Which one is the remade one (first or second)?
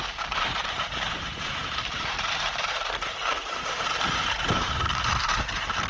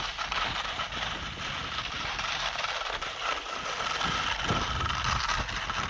first